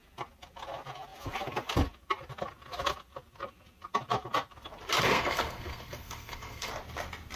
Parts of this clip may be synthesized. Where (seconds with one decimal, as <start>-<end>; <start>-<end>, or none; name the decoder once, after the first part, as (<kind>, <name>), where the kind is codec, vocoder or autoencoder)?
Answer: 5.1-6.7 (codec, SNAC)